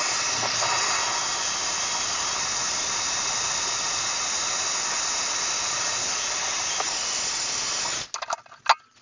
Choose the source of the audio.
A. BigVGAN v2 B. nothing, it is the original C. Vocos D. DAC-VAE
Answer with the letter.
B